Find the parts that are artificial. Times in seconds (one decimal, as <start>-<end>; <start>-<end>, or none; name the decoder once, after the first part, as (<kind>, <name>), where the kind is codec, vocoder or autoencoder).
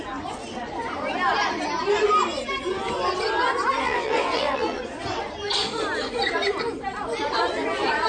3.8-4.8 (vocoder, WaveNeXt)